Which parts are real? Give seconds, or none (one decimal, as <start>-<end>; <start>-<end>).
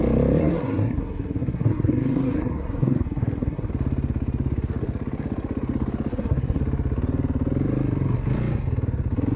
0.0-0.4; 3.7-6.1; 6.6-9.4